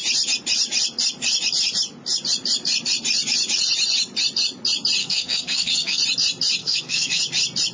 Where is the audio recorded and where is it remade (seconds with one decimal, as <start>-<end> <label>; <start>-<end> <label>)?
0.0-5.0 recorded; 5.0-6.0 remade; 6.0-6.6 recorded; 6.6-7.2 remade; 7.2-7.7 recorded